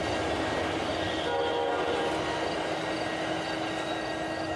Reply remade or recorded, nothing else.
recorded